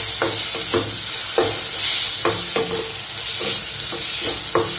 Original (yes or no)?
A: yes